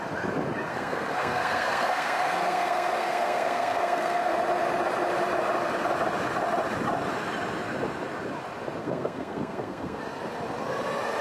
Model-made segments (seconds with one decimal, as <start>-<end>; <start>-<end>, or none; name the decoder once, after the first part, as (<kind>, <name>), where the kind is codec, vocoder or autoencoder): 0.7-4.3 (codec, SNAC); 8.8-10.0